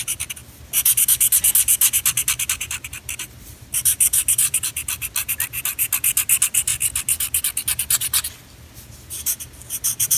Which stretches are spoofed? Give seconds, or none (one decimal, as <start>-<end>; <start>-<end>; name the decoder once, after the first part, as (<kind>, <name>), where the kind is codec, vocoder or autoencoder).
none